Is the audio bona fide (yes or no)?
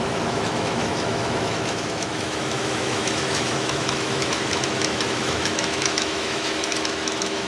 no